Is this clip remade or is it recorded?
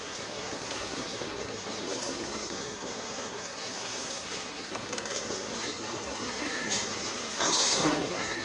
remade